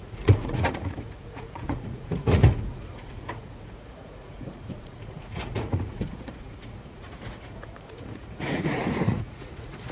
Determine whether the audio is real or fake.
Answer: fake